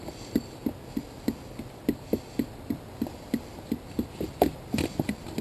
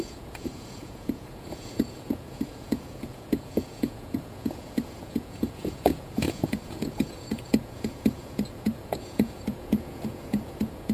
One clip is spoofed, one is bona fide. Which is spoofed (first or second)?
second